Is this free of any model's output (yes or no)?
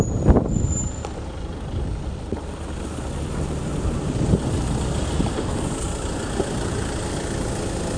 yes